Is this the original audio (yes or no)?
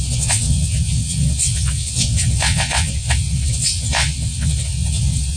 no